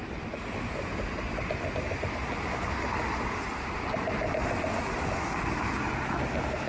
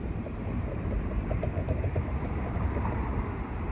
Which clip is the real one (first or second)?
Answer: first